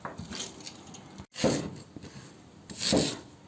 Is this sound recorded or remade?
recorded